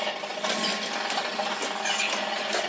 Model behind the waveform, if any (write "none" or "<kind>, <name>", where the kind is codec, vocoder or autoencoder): none